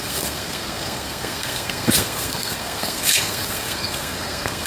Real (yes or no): no